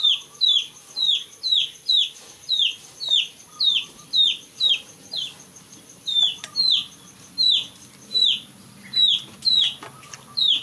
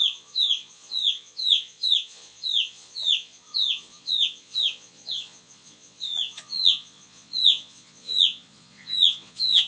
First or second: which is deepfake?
second